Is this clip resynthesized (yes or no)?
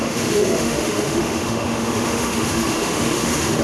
yes